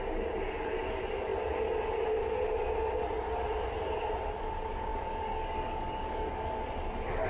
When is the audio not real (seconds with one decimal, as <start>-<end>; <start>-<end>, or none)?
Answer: 4.9-6.4